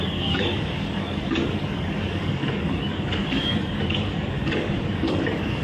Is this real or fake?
fake